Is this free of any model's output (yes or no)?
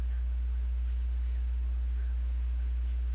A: yes